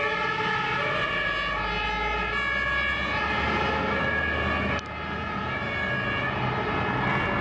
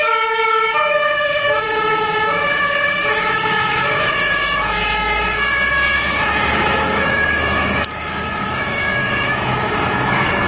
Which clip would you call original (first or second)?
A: first